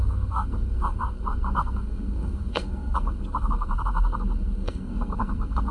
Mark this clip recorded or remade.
remade